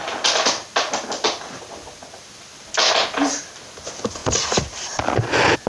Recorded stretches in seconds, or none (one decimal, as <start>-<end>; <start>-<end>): 0.0-5.7